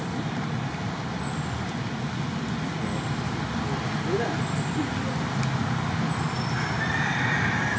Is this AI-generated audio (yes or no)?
no